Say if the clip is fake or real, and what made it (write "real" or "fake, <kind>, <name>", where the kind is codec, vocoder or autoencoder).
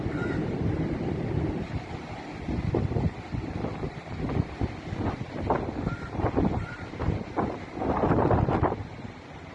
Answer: real